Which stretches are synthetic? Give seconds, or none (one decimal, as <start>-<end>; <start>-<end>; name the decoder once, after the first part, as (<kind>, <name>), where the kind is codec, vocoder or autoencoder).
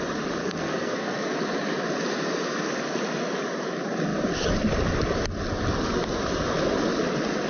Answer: 0.4-1.3 (codec, SNAC)